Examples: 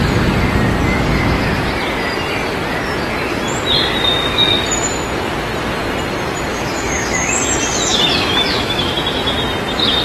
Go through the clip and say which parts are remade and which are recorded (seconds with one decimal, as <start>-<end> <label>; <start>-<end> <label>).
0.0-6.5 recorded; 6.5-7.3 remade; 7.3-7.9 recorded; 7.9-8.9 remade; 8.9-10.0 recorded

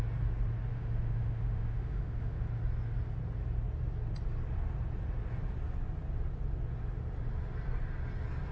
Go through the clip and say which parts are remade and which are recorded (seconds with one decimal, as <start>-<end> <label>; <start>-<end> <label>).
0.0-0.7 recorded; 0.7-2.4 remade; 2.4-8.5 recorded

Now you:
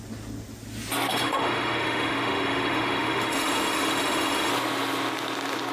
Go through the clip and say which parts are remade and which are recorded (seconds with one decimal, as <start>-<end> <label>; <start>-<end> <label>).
0.0-1.1 recorded; 1.1-4.5 remade; 4.5-5.7 recorded

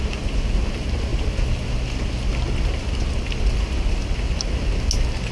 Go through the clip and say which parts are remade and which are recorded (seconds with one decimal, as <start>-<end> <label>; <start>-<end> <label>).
0.0-5.3 recorded